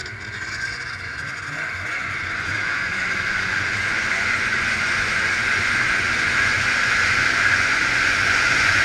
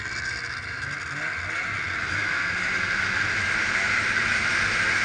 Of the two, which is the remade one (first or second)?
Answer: first